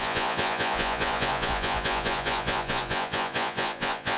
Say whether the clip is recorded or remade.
remade